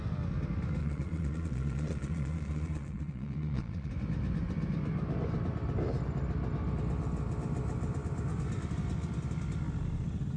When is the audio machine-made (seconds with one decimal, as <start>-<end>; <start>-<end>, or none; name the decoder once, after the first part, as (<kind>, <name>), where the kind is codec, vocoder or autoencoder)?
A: 0.8-3.9 (vocoder, Vocos)